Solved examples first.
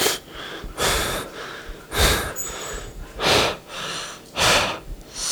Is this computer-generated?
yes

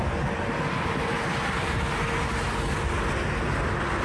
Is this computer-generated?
no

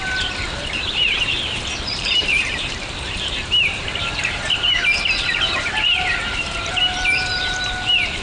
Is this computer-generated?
yes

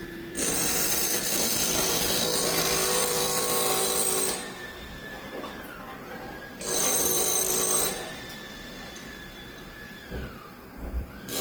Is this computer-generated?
yes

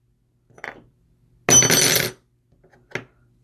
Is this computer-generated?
no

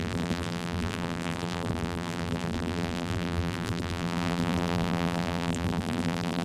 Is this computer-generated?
yes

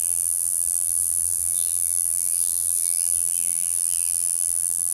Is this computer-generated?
yes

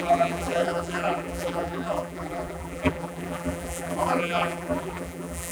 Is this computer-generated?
yes